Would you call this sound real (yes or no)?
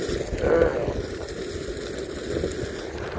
yes